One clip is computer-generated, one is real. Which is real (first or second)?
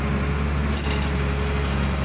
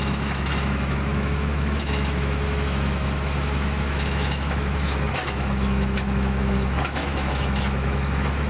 first